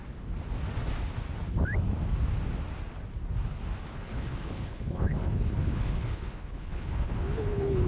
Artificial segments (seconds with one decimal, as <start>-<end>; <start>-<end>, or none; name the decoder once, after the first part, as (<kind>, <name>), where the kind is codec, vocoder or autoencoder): 3.9-7.9 (codec, HILCodec)